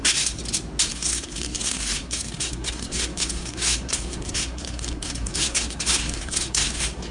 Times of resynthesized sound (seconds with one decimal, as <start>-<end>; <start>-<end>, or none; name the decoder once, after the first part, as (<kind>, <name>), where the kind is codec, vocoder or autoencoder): 0.0-0.4 (codec, SNAC); 0.9-7.1